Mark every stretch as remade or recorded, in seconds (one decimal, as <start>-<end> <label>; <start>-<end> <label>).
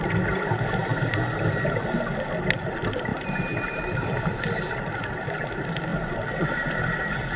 0.0-3.1 recorded; 3.1-4.4 remade; 4.4-7.4 recorded